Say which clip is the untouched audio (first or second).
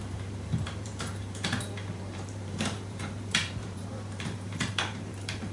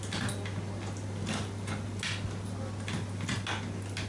second